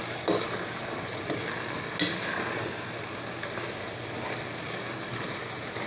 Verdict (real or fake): real